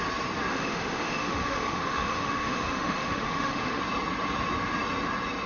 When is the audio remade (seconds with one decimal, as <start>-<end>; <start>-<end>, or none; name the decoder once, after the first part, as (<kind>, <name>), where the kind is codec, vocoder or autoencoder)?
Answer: 0.5-3.8 (autoencoder, DAC-VAE)

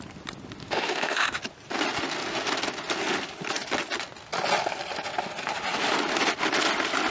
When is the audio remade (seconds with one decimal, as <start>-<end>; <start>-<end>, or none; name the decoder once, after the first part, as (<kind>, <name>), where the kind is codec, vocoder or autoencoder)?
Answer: 0.6-1.4 (autoencoder, DAC-VAE)

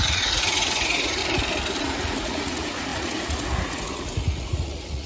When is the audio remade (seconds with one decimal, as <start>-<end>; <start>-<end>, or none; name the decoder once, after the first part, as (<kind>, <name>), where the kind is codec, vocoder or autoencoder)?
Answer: 0.0-1.2 (vocoder, Vocos); 1.8-5.1

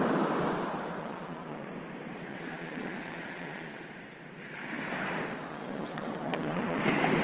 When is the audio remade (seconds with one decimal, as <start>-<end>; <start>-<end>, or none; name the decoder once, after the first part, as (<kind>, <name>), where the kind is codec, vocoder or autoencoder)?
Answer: 1.0-1.7 (vocoder, Vocos); 2.3-3.8; 5.5-6.8

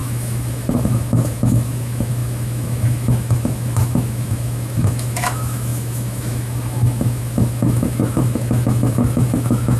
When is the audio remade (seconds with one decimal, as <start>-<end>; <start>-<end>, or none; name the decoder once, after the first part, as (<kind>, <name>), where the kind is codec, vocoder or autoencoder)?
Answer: 0.0-9.8 (autoencoder, DAC-VAE)

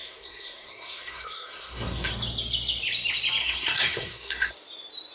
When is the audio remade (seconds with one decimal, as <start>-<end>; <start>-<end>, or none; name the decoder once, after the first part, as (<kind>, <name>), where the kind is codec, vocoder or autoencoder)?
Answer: 0.0-2.1 (codec, SNAC); 3.4-4.5

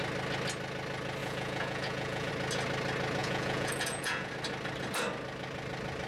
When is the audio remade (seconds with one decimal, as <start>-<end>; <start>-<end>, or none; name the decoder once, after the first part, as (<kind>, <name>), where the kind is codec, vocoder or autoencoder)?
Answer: 1.2-2.3 (vocoder, Vocos); 3.2-4.3